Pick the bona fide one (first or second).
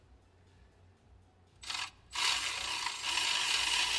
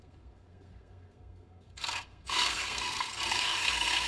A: first